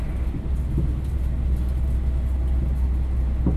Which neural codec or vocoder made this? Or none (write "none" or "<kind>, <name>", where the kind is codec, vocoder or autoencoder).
none